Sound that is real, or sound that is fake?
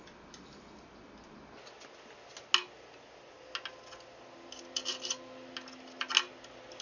real